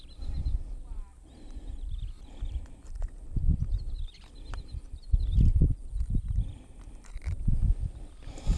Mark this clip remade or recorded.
recorded